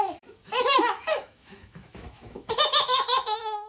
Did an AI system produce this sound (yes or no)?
yes